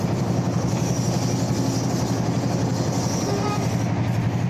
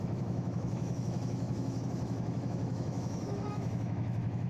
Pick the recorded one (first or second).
first